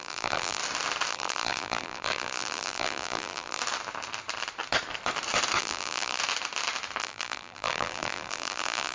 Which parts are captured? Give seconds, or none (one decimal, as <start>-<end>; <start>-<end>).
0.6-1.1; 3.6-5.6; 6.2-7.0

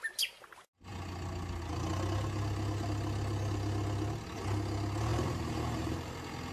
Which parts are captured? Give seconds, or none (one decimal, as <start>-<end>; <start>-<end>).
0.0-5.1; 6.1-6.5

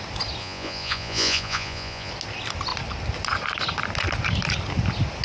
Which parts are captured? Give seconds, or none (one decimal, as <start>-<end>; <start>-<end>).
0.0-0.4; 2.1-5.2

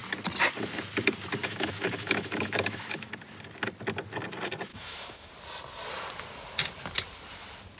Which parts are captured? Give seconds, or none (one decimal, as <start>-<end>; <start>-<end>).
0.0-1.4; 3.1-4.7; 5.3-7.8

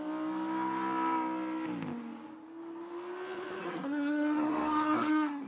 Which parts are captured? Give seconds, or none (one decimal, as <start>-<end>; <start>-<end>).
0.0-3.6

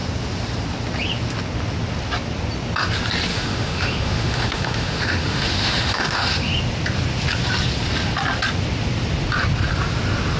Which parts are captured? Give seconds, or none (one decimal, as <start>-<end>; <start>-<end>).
0.0-3.3; 6.5-10.4

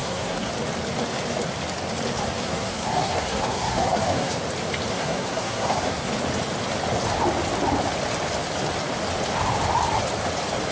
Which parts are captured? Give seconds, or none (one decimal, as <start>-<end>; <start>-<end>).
0.5-2.4; 4.4-4.9; 6.1-10.7